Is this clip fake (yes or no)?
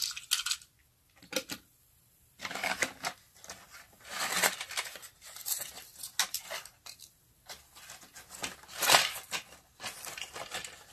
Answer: no